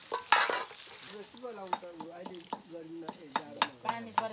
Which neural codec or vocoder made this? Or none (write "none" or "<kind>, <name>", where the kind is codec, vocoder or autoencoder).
none